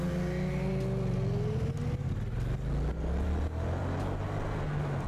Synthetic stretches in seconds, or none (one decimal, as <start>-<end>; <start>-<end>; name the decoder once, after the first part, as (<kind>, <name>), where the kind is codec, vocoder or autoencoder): none